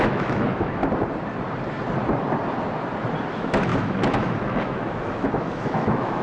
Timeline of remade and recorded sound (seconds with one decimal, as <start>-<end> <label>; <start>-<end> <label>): 0.0-0.8 remade; 0.8-3.3 recorded; 3.3-6.2 remade